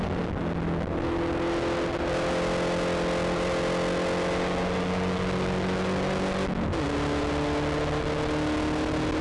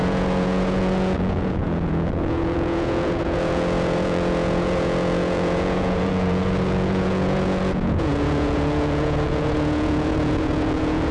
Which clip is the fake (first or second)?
second